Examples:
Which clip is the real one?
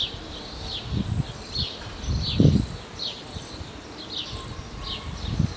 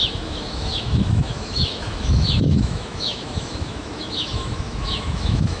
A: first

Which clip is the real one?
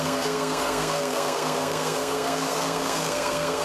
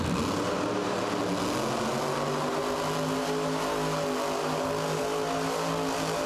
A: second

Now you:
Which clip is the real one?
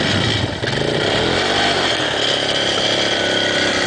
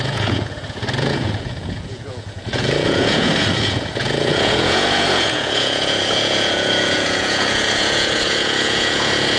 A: first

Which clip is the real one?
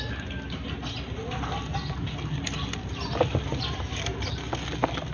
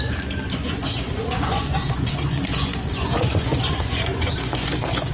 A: first